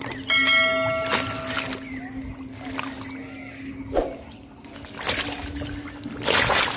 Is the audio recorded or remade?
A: recorded